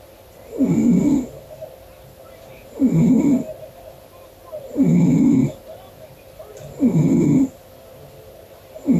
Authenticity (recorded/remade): recorded